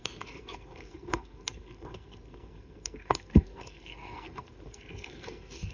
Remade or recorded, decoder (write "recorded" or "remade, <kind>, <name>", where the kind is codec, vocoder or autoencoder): remade, codec, SNAC